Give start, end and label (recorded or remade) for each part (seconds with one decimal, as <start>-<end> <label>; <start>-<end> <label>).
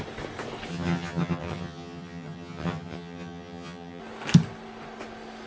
0.0-0.7 recorded; 0.7-4.0 remade; 4.0-5.5 recorded